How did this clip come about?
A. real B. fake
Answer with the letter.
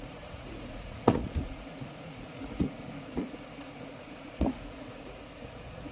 B